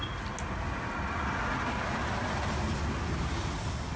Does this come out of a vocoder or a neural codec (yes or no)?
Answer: no